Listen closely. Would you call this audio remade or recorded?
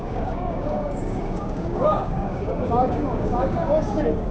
remade